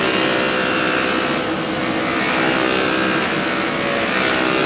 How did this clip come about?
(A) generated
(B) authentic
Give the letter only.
B